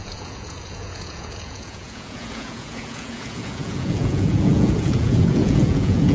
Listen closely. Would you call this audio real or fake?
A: fake